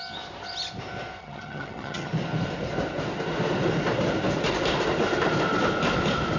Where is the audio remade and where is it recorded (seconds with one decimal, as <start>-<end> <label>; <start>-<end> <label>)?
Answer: 0.0-1.2 recorded; 1.2-2.1 remade; 2.1-6.4 recorded